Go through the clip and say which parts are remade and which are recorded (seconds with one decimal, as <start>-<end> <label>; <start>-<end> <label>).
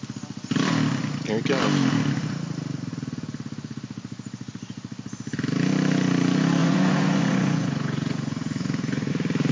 0.0-6.6 recorded; 6.6-9.1 remade; 9.1-9.5 recorded